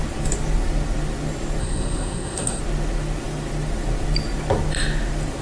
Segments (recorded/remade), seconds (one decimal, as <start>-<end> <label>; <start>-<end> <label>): 0.0-1.6 recorded; 1.6-2.6 remade; 2.6-5.4 recorded